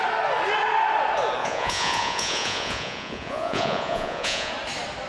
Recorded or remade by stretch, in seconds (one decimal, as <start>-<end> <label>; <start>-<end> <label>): 0.0-1.4 recorded; 1.4-4.5 remade; 4.5-5.1 recorded